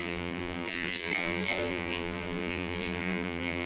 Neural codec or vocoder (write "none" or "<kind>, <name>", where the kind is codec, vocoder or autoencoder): vocoder, BigVGAN v2